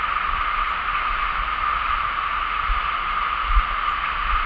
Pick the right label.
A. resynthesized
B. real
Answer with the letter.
B